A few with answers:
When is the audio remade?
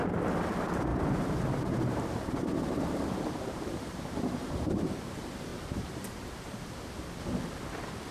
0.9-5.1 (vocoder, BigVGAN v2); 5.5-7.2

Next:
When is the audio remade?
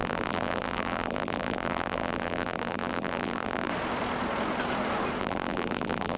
0.0-3.7 (vocoder, BigVGAN v2); 5.2-6.2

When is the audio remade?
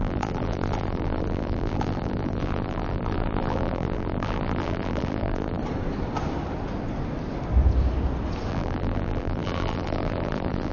0.0-5.6 (vocoder, BigVGAN v2); 8.5-10.7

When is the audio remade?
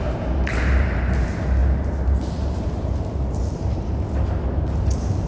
0.0-5.3 (vocoder, BigVGAN v2)